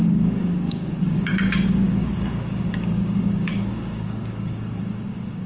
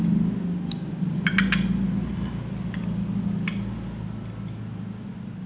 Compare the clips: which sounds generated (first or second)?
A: first